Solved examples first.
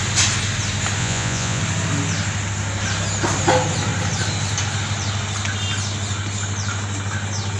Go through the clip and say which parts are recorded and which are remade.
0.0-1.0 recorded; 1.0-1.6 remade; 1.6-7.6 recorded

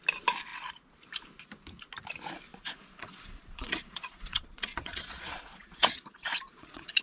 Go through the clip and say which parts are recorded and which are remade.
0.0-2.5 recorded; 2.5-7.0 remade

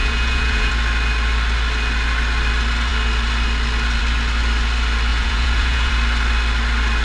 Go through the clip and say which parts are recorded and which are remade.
0.0-0.7 remade; 0.7-5.1 recorded; 5.1-5.9 remade; 5.9-7.0 recorded

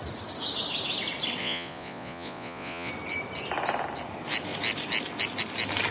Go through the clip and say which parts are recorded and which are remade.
0.0-1.4 recorded; 1.4-2.9 remade; 2.9-5.9 recorded

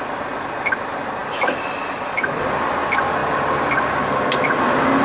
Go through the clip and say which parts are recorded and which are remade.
0.0-5.0 recorded